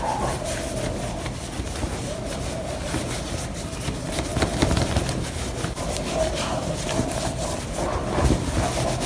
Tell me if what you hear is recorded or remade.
recorded